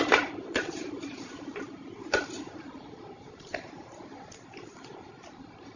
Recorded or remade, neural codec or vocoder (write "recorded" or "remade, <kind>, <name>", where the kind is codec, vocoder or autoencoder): remade, vocoder, BigVGAN v2